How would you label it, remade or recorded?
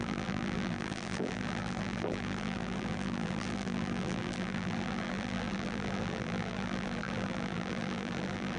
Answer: remade